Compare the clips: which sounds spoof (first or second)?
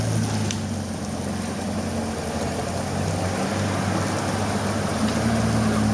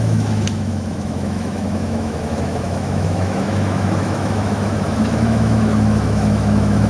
second